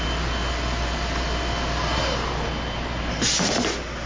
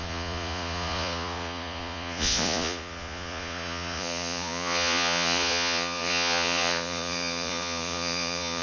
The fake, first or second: second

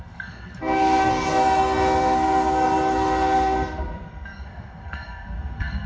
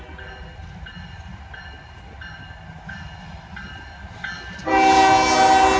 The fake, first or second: first